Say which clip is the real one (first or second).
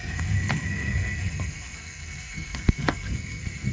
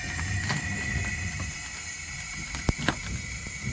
second